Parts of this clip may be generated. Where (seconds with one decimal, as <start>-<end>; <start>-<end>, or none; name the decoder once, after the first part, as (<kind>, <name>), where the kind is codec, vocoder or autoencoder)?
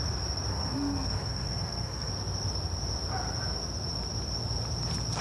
0.5-2.1 (codec, SNAC)